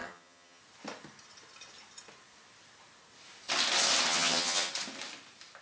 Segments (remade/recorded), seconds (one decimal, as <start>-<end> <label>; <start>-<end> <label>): 0.0-0.6 remade; 0.6-4.1 recorded; 4.1-4.7 remade; 4.7-5.6 recorded

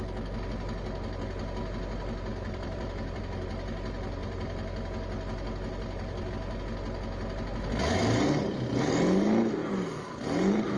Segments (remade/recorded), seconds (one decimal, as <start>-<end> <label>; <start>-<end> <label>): 0.0-2.3 recorded; 2.3-3.2 remade; 3.2-4.2 recorded; 4.2-6.3 remade; 6.3-10.8 recorded

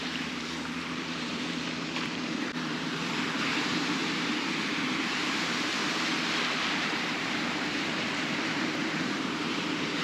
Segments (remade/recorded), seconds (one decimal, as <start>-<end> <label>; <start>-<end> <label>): 0.0-4.0 remade; 4.0-4.7 recorded; 4.7-5.7 remade; 5.7-6.7 recorded; 6.7-10.0 remade

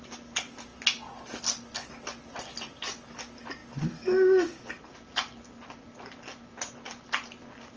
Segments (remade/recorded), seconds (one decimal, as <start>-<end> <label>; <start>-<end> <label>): 0.0-7.8 recorded